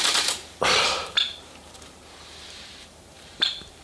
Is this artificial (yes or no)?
yes